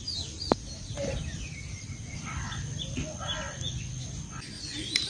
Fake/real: real